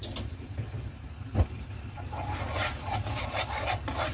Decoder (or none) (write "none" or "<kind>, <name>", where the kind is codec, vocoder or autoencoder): vocoder, BigVGAN v2